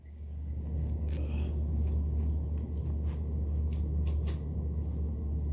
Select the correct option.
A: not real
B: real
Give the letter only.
B